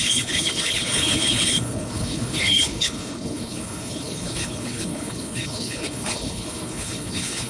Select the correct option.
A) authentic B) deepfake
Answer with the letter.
B